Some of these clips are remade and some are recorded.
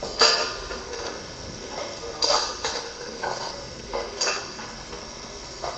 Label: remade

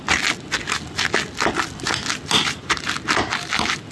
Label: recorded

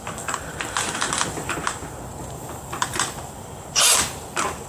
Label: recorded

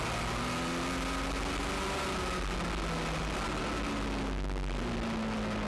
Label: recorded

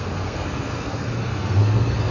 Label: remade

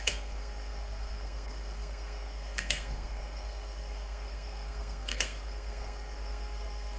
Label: remade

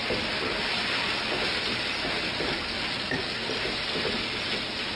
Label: recorded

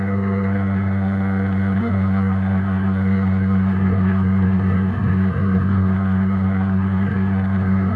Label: remade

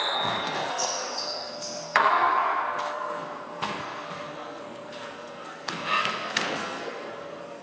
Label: remade